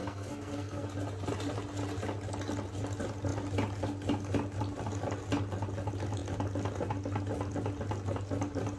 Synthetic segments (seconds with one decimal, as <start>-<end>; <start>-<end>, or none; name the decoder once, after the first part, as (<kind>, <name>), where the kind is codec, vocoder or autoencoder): 0.0-0.9 (codec, SNAC)